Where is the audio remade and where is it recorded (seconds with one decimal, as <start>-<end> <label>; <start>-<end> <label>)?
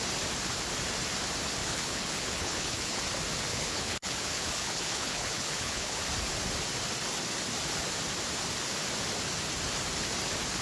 0.0-1.6 recorded; 1.6-3.0 remade; 3.0-3.5 recorded; 3.5-6.0 remade; 6.0-10.6 recorded